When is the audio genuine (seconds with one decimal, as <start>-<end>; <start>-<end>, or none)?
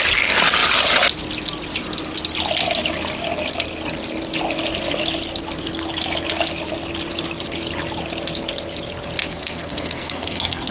0.0-9.2